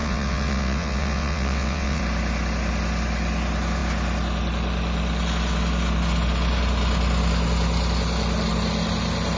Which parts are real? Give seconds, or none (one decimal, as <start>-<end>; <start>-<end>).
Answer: 2.0-9.4